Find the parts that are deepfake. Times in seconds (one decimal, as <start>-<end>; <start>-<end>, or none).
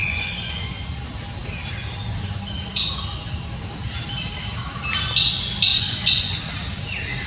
0.0-0.7; 5.7-6.4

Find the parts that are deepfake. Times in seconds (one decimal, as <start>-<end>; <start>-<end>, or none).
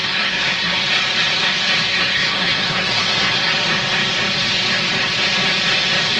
0.0-0.8; 1.9-3.5